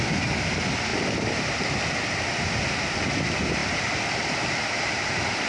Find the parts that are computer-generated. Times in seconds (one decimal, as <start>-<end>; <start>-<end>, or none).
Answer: none